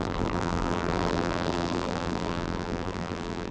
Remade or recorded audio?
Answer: remade